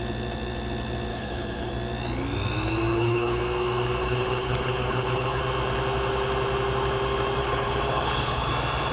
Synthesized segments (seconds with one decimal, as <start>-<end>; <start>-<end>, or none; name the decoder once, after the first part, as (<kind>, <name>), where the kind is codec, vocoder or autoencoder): 1.1-1.7 (codec, HILCodec); 2.9-3.4; 4.0-5.4; 7.4-8.5

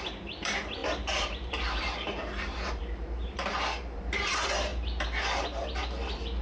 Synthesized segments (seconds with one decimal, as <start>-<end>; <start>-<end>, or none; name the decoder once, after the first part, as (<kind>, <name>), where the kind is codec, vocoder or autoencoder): 0.0-6.4 (vocoder, BigVGAN v2)

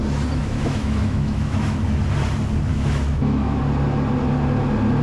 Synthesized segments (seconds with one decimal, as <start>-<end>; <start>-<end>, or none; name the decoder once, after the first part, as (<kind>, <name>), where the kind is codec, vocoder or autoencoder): 0.4-1.8 (autoencoder, DAC-VAE); 2.7-3.6